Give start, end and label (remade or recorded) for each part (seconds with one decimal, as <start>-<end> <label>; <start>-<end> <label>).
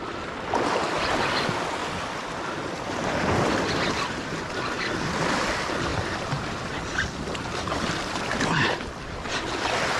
0.0-1.8 recorded; 1.8-2.9 remade; 2.9-5.9 recorded; 5.9-9.5 remade; 9.5-10.0 recorded